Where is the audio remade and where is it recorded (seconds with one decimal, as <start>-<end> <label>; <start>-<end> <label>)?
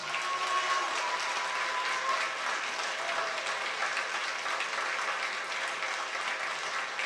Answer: 0.0-7.1 recorded